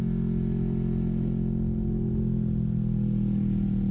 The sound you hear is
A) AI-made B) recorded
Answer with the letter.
B